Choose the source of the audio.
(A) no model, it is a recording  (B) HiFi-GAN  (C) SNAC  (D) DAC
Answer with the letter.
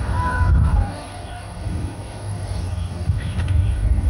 D